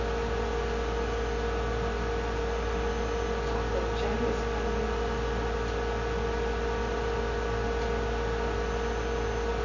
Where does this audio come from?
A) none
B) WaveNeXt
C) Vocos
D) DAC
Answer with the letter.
A